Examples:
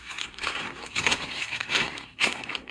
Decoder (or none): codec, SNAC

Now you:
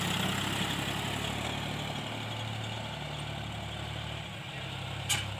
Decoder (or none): none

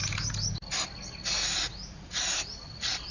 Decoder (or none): none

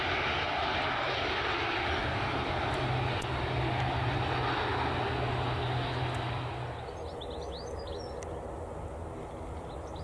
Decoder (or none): none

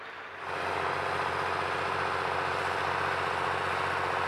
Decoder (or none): none